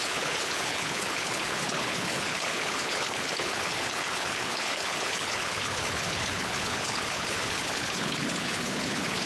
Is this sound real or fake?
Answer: fake